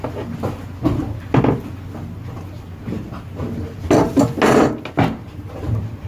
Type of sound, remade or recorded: recorded